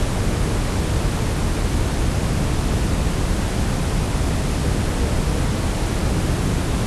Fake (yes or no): no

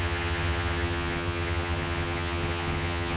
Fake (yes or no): yes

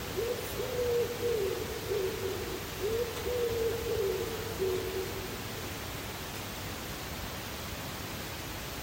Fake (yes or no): no